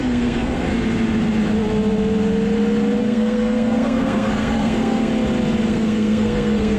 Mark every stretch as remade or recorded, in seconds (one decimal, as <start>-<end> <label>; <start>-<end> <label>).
0.0-0.7 remade; 0.7-3.0 recorded; 3.0-5.1 remade; 5.1-5.7 recorded; 5.7-6.8 remade